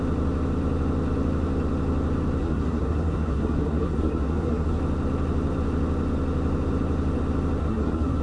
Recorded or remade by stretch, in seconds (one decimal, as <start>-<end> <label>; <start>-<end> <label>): 0.0-2.4 recorded; 2.4-4.8 remade; 4.8-7.6 recorded; 7.6-8.2 remade